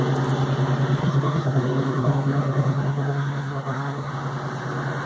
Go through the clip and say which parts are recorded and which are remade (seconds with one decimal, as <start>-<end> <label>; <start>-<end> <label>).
0.0-1.0 recorded; 1.0-4.1 remade; 4.1-5.1 recorded